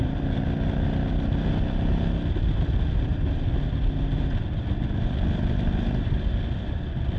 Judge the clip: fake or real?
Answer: real